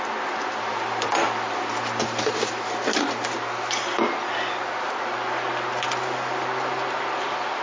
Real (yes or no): yes